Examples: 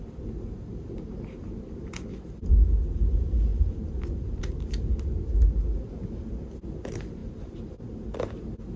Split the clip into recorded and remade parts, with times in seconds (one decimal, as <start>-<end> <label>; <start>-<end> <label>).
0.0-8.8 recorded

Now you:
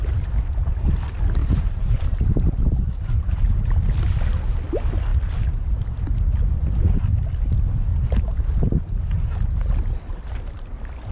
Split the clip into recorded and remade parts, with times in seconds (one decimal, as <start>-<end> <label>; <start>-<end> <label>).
0.0-1.4 recorded; 1.4-3.8 remade; 3.8-7.9 recorded; 7.9-8.5 remade; 8.5-11.1 recorded

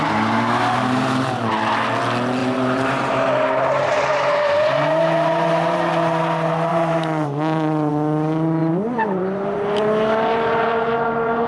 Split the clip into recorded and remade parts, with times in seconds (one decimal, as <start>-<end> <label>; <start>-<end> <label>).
0.0-0.6 recorded; 0.6-1.5 remade; 1.5-2.4 recorded; 2.4-5.9 remade; 5.9-6.7 recorded; 6.7-7.9 remade; 7.9-8.6 recorded; 8.6-11.5 remade

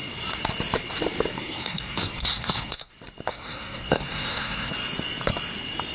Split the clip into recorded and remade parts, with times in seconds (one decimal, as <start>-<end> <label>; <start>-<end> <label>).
0.0-1.3 recorded; 1.3-2.9 remade; 2.9-3.3 recorded; 3.3-4.7 remade; 4.7-5.9 recorded

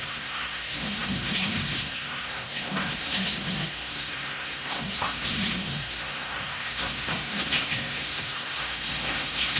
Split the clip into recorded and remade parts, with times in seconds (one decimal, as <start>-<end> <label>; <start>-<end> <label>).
0.0-9.6 remade

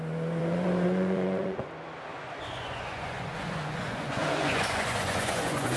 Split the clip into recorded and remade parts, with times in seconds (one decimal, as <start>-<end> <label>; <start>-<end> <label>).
0.0-0.4 recorded; 0.4-1.7 remade; 1.7-2.1 recorded; 2.1-5.8 remade